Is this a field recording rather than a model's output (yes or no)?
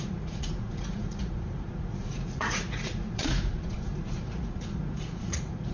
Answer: no